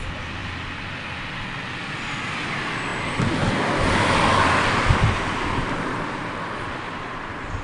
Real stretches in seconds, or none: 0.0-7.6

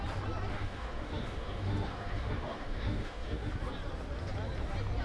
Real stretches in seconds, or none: 0.0-0.5; 3.5-5.0

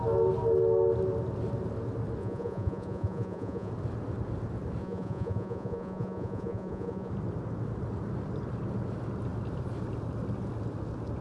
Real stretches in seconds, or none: 0.0-2.2; 3.7-4.8; 7.1-11.2

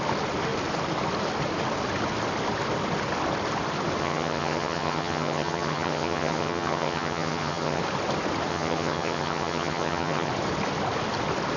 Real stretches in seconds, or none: 0.0-4.0; 7.8-8.5; 10.3-11.6

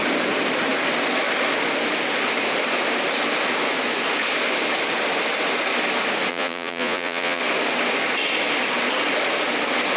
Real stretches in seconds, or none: 0.0-6.3; 7.4-10.0

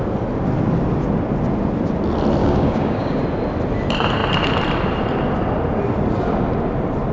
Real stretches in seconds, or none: 0.0-2.4; 3.2-7.1